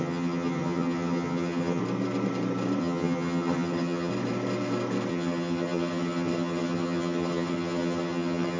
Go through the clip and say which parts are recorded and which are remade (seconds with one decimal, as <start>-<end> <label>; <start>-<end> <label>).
0.0-1.8 remade; 1.8-2.8 recorded; 2.8-4.1 remade; 4.1-5.1 recorded; 5.1-8.6 remade